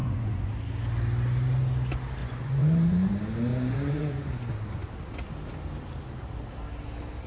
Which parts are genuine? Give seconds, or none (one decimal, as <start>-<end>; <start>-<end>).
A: 0.5-2.2; 3.1-3.5; 4.3-7.3